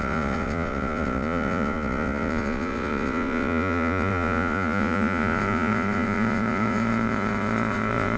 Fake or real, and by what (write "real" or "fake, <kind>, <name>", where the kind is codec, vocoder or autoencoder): fake, vocoder, Vocos